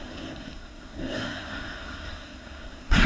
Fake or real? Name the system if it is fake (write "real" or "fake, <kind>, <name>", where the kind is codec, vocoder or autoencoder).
fake, codec, SNAC